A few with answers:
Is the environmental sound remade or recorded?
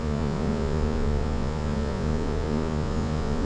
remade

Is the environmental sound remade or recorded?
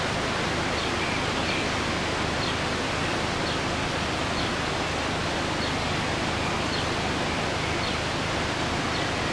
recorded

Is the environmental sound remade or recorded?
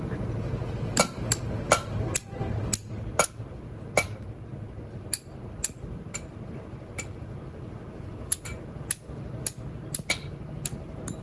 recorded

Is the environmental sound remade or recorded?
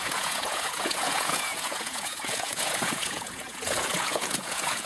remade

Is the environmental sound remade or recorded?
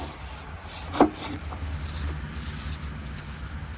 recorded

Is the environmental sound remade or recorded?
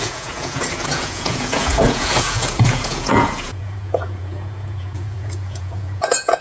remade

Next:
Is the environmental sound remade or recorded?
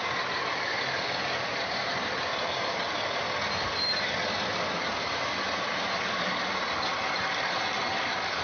recorded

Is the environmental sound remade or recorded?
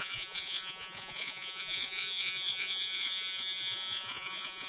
remade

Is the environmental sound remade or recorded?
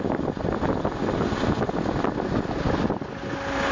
recorded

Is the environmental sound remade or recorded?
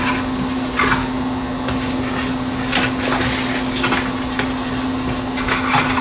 recorded